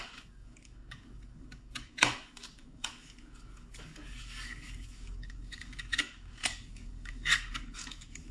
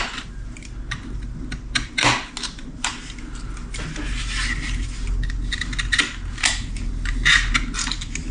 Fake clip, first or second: first